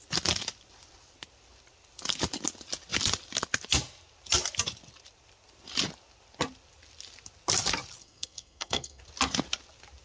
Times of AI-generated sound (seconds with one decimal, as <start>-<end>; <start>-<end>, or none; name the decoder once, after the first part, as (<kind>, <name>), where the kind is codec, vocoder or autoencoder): 8.0-9.0 (codec, SNAC)

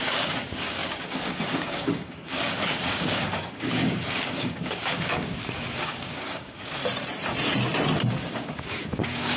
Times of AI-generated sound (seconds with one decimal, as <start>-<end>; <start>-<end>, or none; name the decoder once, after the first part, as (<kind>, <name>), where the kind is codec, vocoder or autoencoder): 0.0-6.8 (codec, DAC); 8.1-9.4

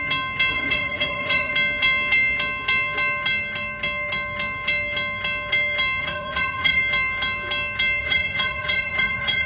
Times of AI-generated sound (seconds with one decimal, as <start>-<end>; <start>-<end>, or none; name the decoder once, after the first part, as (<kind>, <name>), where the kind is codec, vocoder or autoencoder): 0.5-1.5 (vocoder, Vocos); 6.0-6.8; 8.0-9.5

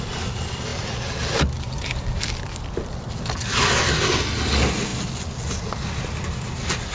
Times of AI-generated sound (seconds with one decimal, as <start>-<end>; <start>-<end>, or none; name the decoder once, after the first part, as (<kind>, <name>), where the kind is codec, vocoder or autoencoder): none

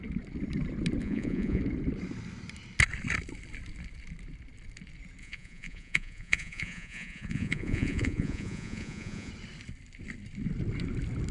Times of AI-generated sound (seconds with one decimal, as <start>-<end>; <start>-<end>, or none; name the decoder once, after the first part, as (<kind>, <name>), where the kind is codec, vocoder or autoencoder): 1.0-1.6 (vocoder, Vocos); 5.2-9.3

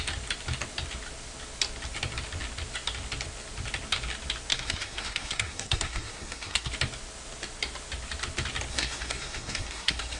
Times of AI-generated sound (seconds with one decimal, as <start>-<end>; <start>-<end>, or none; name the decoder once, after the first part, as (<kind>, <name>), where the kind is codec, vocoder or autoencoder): 4.5-6.7 (codec, SNAC); 8.7-10.2

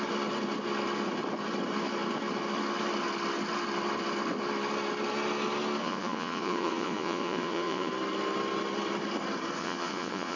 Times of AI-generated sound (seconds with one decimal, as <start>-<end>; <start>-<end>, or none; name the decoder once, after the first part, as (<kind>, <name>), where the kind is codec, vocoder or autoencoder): 5.8-7.9 (vocoder, Vocos); 9.6-10.4

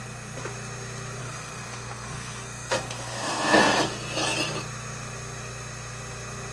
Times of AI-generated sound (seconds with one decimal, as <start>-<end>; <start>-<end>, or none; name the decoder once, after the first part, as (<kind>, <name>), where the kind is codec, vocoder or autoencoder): 1.2-3.6 (codec, SNAC)